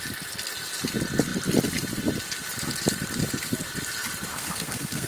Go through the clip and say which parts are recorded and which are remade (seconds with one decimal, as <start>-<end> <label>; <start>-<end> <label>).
0.0-4.3 recorded; 4.3-5.1 remade

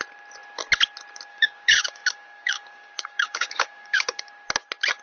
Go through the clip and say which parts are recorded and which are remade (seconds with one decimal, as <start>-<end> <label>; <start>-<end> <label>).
0.0-1.3 recorded; 1.3-4.3 remade; 4.3-5.0 recorded

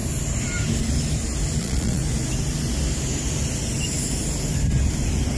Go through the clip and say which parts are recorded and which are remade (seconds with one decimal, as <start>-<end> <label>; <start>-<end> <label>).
0.0-1.6 recorded; 1.6-2.0 remade; 2.0-5.4 recorded

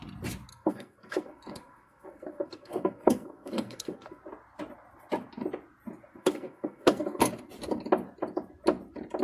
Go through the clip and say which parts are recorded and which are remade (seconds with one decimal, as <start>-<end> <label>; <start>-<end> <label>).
0.0-0.5 recorded; 0.5-4.2 remade; 4.2-6.2 recorded; 6.2-7.3 remade; 7.3-9.2 recorded